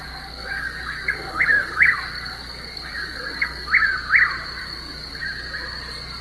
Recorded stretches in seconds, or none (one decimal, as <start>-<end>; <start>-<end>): 3.7-4.6; 5.2-6.2